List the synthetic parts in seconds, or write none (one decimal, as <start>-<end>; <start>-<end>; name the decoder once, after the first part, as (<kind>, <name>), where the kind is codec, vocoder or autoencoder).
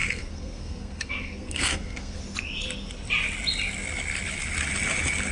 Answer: 0.0-2.2 (codec, SNAC)